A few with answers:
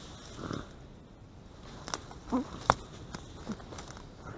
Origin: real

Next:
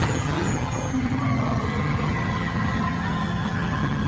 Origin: fake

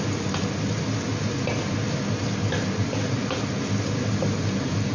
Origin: real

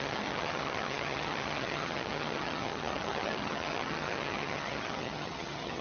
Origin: fake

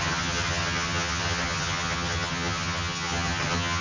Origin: fake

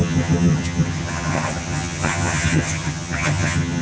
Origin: fake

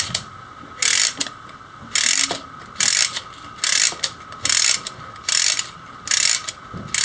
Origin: real